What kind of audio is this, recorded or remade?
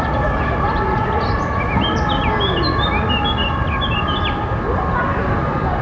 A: recorded